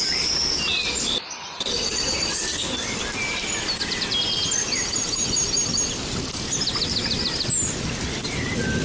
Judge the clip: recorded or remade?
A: recorded